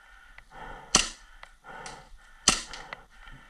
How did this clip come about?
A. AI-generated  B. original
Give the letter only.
B